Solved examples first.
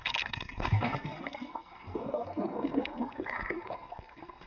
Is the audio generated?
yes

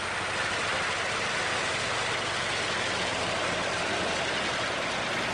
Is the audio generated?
no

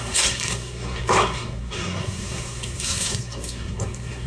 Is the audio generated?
yes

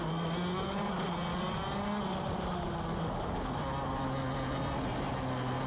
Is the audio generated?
no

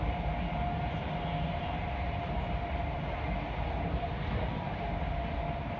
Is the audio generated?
no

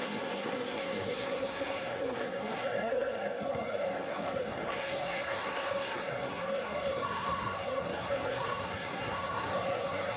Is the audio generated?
yes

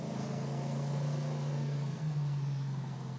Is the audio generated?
yes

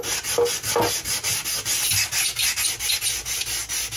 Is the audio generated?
no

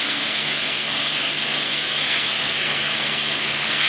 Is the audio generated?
yes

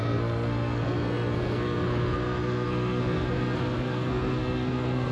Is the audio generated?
yes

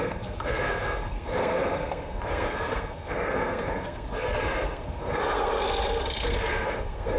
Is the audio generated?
yes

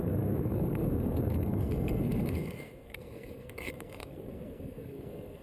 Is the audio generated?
yes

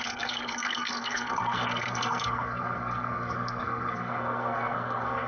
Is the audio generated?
yes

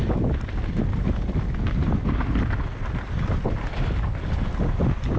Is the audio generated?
no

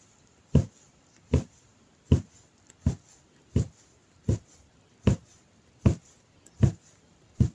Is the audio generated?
no